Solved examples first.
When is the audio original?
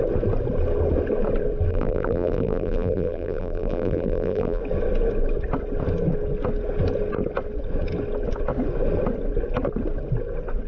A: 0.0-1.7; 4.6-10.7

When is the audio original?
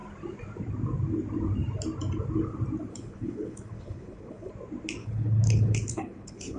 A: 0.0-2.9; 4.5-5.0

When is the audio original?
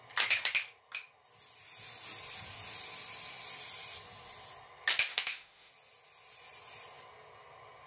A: 0.0-5.1; 5.7-7.9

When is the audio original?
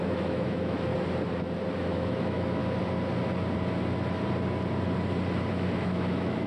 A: 0.9-1.8; 2.6-5.5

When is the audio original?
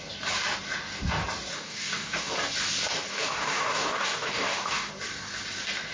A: 0.0-1.5; 2.3-3.1; 4.9-5.9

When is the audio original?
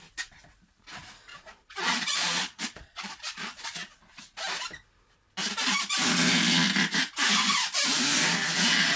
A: 0.0-1.3; 4.2-9.0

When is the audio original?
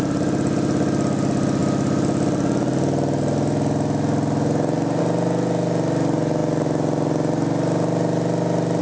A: 0.0-8.8